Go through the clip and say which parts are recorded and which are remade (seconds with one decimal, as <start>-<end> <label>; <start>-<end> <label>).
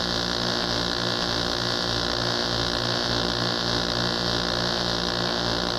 0.0-5.8 recorded